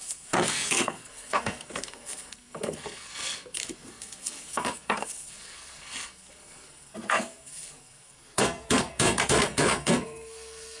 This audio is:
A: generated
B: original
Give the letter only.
A